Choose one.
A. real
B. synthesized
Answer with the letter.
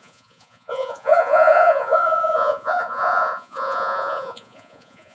B